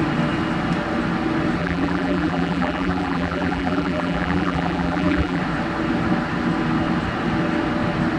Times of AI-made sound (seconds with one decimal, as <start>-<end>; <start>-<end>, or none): 1.6-5.4